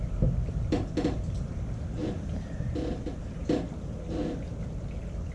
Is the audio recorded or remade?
recorded